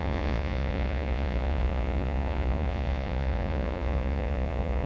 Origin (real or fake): fake